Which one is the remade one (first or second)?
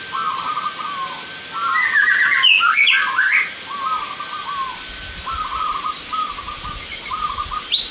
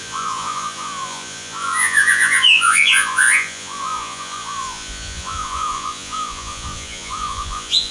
second